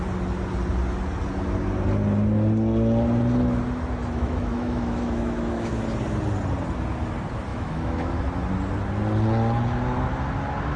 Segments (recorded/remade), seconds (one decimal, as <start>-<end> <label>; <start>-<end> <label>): 0.0-4.0 recorded; 4.0-5.7 remade; 5.7-7.5 recorded; 7.5-8.1 remade; 8.1-10.8 recorded